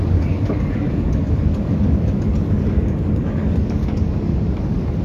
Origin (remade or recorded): remade